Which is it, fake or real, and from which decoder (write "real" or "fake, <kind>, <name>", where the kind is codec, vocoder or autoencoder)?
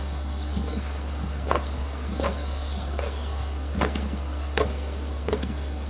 fake, codec, SNAC